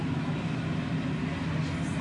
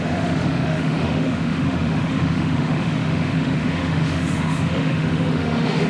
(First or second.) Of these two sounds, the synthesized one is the second